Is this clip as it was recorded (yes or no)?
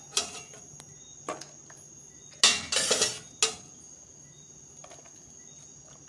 yes